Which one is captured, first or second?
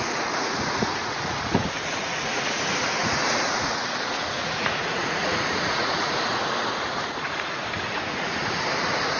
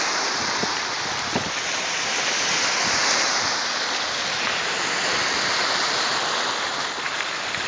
second